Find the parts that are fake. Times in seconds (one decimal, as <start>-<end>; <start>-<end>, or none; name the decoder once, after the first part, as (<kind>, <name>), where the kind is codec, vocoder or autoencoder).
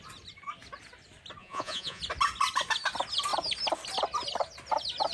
1.4-2.0 (vocoder, Vocos)